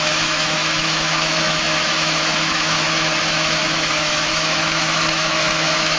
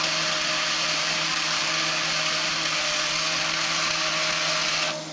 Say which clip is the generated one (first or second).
first